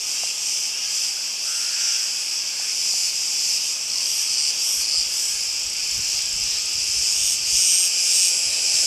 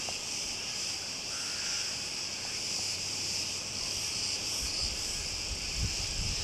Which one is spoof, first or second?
second